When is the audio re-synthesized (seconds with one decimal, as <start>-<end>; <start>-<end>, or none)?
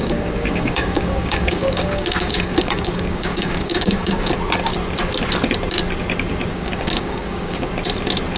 0.0-4.3; 6.5-7.7